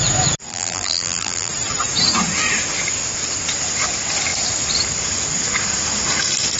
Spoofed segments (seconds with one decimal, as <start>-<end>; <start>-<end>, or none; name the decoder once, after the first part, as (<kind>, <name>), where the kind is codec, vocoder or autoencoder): 0.5-1.5 (vocoder, BigVGAN v2)